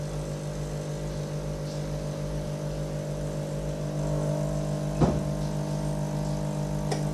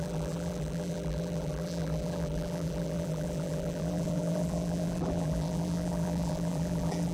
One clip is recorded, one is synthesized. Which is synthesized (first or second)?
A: second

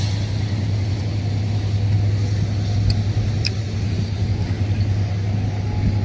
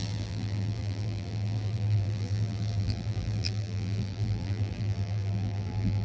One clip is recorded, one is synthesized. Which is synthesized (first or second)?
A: second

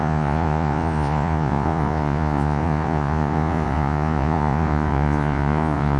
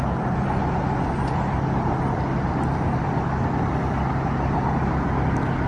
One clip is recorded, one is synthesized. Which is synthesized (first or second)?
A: first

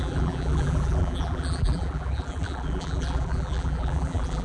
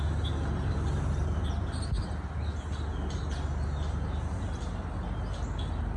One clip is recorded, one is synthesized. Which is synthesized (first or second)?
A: first